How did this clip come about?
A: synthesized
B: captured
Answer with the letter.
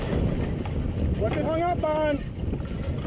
B